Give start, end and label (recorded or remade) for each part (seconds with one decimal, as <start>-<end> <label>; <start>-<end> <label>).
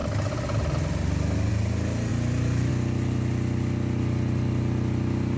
0.0-2.1 recorded; 2.1-2.7 remade; 2.7-5.4 recorded